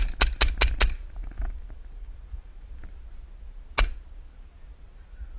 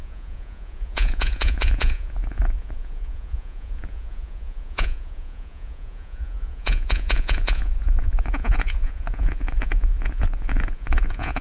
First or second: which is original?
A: first